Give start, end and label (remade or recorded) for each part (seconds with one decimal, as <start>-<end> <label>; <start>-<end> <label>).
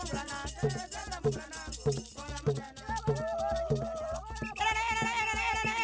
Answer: 0.0-5.8 recorded